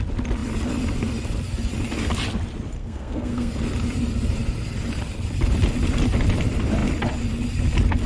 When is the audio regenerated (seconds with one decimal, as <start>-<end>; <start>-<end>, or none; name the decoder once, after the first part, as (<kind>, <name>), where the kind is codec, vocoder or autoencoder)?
2.8-3.5 (codec, SNAC)